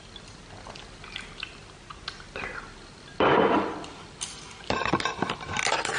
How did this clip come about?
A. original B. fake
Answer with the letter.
A